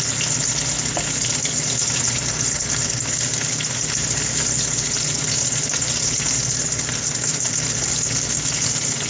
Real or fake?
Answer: real